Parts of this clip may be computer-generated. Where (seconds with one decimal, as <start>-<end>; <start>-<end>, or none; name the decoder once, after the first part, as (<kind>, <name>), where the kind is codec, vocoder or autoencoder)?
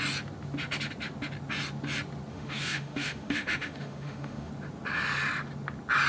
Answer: 2.3-4.5 (autoencoder, DAC-VAE)